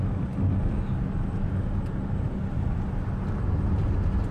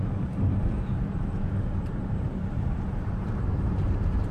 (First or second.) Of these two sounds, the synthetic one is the second